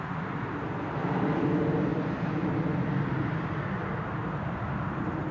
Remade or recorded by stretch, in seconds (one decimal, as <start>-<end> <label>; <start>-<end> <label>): 0.0-5.3 recorded